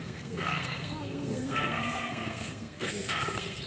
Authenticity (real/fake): fake